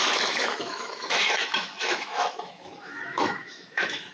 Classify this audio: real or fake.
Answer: fake